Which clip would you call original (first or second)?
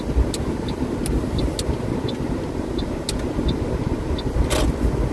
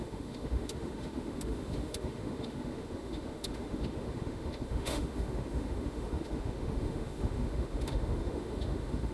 first